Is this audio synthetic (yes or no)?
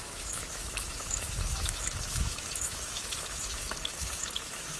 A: yes